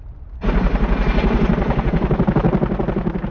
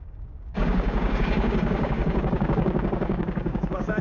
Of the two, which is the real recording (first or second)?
first